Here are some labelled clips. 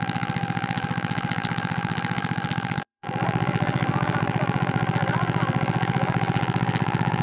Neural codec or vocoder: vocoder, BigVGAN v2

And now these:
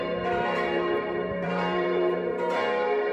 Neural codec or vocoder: vocoder, BigVGAN v2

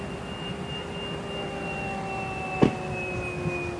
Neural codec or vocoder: none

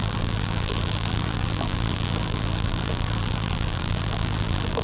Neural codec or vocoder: vocoder, BigVGAN v2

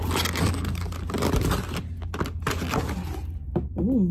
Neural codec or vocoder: none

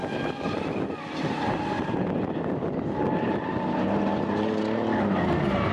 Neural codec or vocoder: none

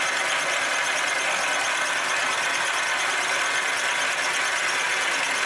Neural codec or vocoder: none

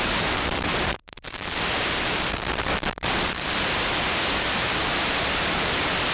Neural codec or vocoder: vocoder, BigVGAN v2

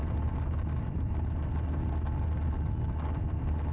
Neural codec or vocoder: none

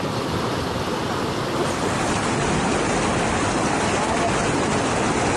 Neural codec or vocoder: none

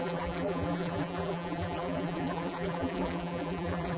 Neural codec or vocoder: vocoder, BigVGAN v2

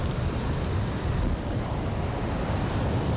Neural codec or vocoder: none